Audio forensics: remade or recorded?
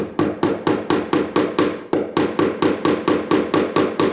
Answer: recorded